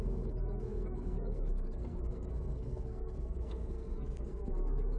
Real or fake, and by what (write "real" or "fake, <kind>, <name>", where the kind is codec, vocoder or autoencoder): fake, codec, SNAC